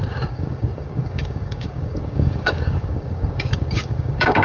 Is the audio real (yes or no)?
no